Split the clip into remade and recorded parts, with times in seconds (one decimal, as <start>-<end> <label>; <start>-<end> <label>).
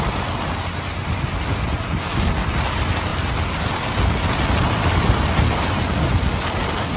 0.0-7.0 recorded